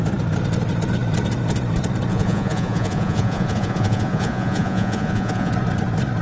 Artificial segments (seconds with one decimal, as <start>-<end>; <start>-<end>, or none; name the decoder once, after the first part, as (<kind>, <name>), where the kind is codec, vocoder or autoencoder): 2.1-5.5 (vocoder, Vocos)